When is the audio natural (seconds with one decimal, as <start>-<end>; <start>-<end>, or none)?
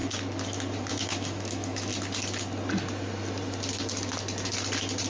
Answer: 0.0-0.9; 1.9-5.1